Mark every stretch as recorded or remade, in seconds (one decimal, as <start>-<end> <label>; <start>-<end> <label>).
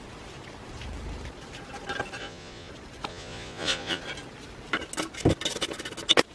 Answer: 0.0-2.2 recorded; 2.2-2.7 remade; 2.7-3.1 recorded; 3.1-4.0 remade; 4.0-6.3 recorded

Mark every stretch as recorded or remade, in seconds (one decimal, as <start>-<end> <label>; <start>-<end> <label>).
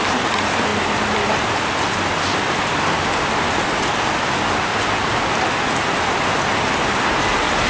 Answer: 0.0-7.7 recorded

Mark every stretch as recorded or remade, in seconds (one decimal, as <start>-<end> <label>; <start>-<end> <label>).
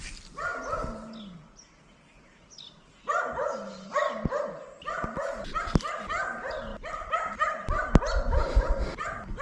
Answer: 0.0-6.7 recorded; 6.7-8.6 remade; 8.6-9.4 recorded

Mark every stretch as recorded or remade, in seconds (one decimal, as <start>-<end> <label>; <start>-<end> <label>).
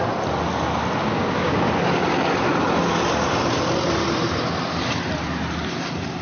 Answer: 0.0-1.0 recorded; 1.0-1.7 remade; 1.7-6.2 recorded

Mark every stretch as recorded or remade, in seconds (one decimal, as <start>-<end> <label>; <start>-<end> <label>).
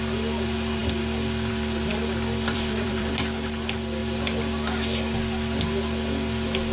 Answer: 0.0-1.9 recorded; 1.9-3.1 remade; 3.1-6.7 recorded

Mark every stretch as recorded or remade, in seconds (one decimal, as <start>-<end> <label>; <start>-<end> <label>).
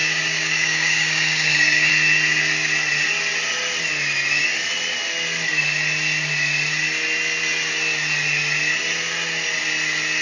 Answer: 0.0-1.9 remade; 1.9-10.2 recorded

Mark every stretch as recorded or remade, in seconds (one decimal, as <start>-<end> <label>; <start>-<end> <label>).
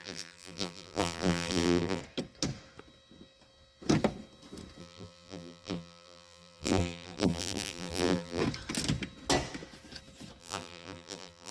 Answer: 0.0-2.0 remade; 2.0-4.8 recorded; 4.8-8.4 remade; 8.4-10.4 recorded; 10.4-11.5 remade